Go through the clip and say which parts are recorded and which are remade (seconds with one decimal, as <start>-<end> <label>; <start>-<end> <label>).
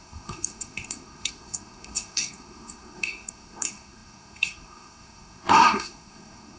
0.0-6.6 remade